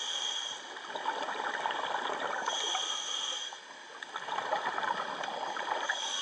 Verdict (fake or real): real